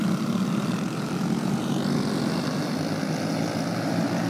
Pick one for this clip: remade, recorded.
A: recorded